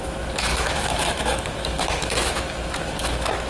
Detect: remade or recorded remade